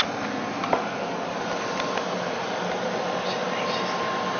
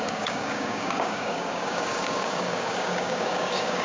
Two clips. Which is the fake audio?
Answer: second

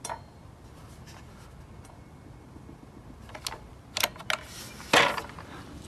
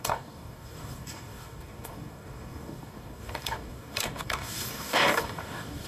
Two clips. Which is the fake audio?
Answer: second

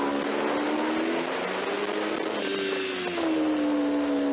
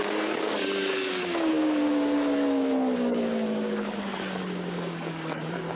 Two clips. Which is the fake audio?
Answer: second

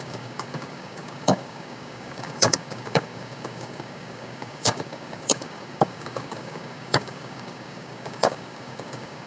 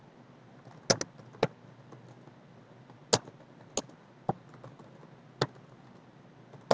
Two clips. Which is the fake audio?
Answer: first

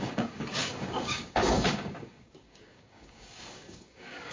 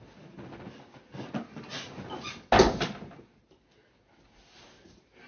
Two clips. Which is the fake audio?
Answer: first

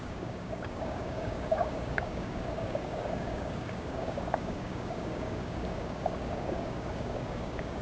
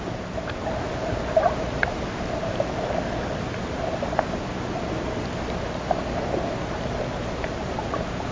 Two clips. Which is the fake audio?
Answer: first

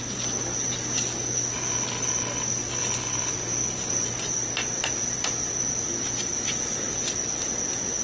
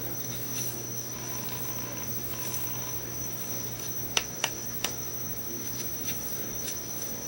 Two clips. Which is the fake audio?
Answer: second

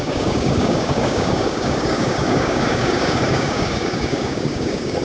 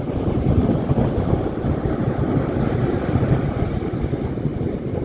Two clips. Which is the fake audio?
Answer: first